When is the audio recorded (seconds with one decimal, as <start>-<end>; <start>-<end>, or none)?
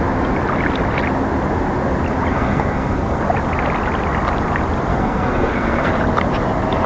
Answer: 0.0-2.3; 3.2-4.9; 5.9-6.9